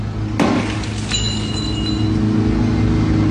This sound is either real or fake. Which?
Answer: real